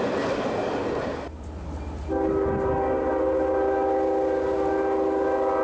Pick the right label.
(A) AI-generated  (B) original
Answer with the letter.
B